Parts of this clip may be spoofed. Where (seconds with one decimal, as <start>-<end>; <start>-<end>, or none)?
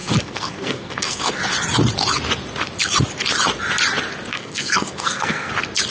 0.0-1.4; 4.3-5.5